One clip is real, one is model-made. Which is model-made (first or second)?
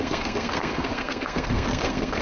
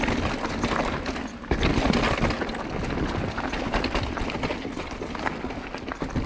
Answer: first